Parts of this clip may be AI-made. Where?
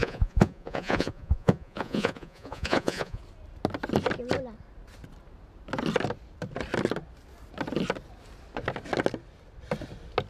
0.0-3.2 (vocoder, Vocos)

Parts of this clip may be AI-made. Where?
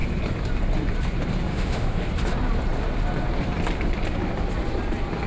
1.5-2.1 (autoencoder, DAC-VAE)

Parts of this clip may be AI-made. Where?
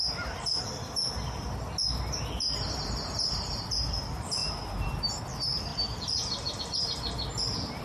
4.4-5.2 (vocoder, BigVGAN v2)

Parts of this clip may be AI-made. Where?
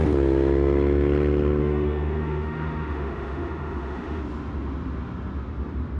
1.6-4.2 (autoencoder, DAC-VAE)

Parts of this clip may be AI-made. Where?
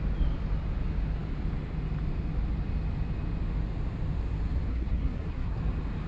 4.7-5.6 (codec, SNAC)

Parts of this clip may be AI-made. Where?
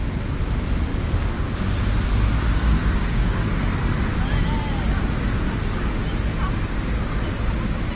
0.9-1.6 (codec, DAC); 2.6-3.4